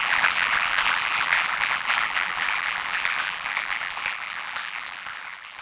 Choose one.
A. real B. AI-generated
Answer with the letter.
B